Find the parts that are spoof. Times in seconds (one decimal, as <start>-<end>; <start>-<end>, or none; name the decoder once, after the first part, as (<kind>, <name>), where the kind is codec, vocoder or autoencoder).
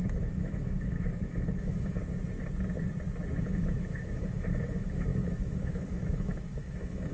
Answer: 0.0-2.0 (autoencoder, DAC-VAE); 3.4-7.1